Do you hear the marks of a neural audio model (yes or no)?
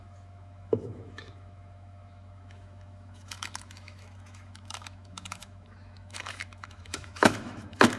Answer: yes